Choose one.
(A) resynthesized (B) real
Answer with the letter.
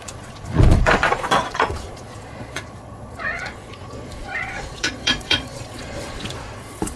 A